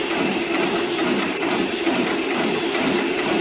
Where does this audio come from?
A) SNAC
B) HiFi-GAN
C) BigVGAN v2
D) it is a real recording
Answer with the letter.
C